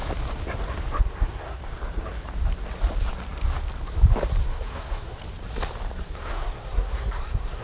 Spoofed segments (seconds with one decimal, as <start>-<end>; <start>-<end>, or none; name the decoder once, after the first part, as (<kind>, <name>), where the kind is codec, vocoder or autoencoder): 1.0-1.6 (codec, SNAC); 4.4-5.2; 6.0-7.6